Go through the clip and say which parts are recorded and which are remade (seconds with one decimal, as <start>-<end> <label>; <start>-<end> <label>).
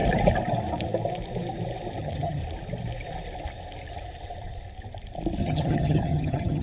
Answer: 0.0-2.0 recorded; 2.0-2.4 remade; 2.4-5.4 recorded; 5.4-6.6 remade